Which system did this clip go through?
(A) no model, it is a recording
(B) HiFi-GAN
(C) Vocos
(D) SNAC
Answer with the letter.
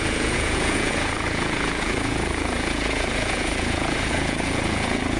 C